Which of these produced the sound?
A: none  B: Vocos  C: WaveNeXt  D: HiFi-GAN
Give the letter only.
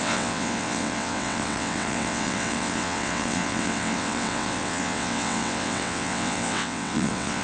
C